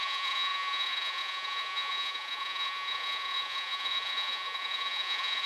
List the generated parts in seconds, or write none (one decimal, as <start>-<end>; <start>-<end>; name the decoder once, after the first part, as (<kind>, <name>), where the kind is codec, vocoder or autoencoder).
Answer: 0.0-5.5 (vocoder, Vocos)